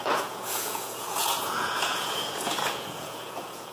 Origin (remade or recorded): remade